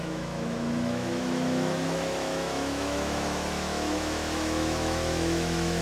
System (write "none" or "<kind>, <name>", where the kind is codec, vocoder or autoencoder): autoencoder, DAC-VAE